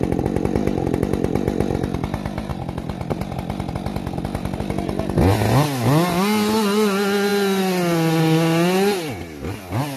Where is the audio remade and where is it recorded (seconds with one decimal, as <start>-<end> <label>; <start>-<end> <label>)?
0.0-10.0 recorded